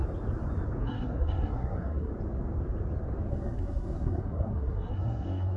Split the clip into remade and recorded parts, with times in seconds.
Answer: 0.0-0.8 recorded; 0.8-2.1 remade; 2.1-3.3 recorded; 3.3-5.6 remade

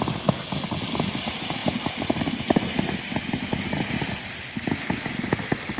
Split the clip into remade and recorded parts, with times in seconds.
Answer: 0.0-5.8 recorded

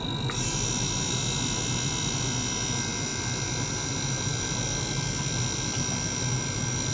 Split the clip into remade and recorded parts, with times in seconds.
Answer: 0.0-6.9 recorded

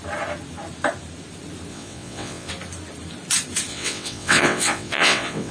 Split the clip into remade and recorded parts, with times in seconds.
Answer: 0.0-1.7 recorded; 1.7-2.5 remade; 2.5-3.7 recorded; 3.7-5.5 remade